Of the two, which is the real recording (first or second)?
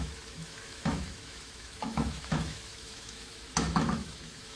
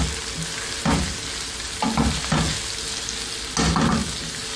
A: second